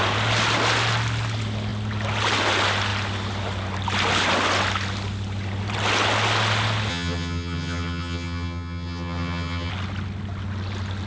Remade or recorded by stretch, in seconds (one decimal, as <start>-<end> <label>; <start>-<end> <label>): 0.0-6.9 recorded; 6.9-9.7 remade; 9.7-11.1 recorded